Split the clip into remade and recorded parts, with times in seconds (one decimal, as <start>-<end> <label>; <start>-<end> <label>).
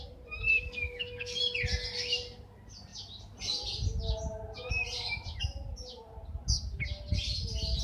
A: 0.0-0.5 recorded; 0.5-1.4 remade; 1.4-7.8 recorded